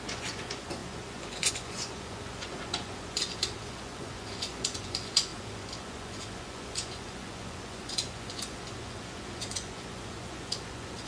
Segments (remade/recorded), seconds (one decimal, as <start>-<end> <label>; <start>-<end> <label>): 0.0-11.1 remade